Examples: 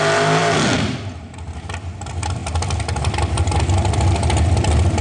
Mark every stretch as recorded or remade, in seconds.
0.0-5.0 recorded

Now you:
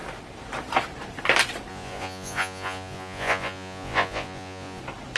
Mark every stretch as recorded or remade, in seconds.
0.0-1.7 recorded; 1.7-4.8 remade; 4.8-5.2 recorded

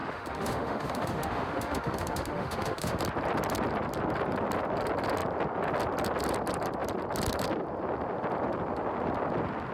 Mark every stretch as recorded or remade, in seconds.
0.0-3.0 remade; 3.0-9.7 recorded

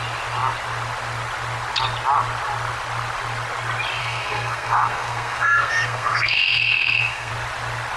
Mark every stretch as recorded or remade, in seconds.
0.0-4.0 recorded; 4.0-7.3 remade; 7.3-8.0 recorded

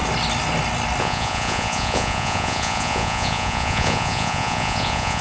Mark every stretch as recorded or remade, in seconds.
0.0-1.0 recorded; 1.0-5.2 remade

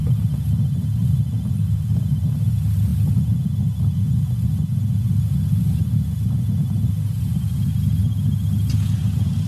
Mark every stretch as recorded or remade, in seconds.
0.0-9.5 recorded

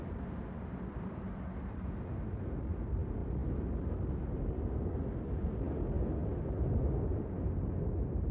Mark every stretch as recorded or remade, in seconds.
0.0-8.3 recorded

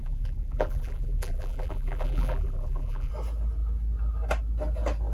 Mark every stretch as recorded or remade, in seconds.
0.0-3.1 remade; 3.1-5.1 recorded